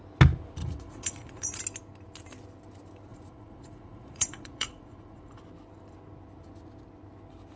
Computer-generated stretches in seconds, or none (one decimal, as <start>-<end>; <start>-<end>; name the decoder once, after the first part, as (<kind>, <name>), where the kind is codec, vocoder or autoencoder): 0.6-1.6 (vocoder, Vocos); 3.1-5.4